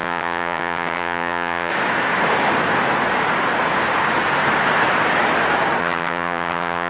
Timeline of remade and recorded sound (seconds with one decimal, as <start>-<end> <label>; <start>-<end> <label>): 0.0-1.7 remade; 1.7-5.8 recorded; 5.8-6.9 remade